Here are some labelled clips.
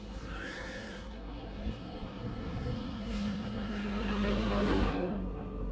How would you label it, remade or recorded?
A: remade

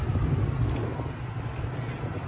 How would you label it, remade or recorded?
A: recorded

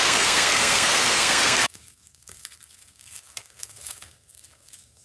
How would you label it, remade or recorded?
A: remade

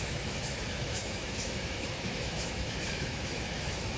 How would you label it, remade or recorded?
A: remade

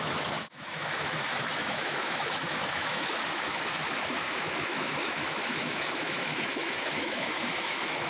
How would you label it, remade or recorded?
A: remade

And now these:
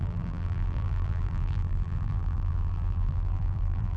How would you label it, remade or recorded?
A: remade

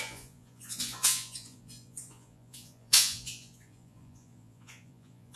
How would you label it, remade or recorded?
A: remade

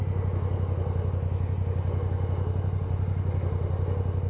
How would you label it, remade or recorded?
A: recorded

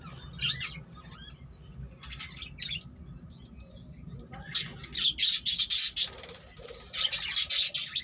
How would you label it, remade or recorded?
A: recorded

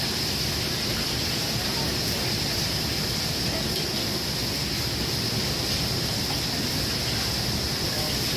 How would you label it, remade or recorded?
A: recorded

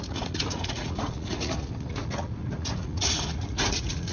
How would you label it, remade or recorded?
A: remade